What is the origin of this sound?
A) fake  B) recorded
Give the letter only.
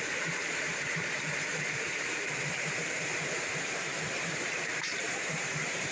A